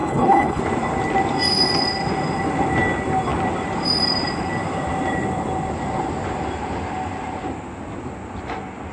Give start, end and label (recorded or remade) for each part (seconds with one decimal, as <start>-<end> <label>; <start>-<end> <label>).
0.0-0.6 remade; 0.6-8.9 recorded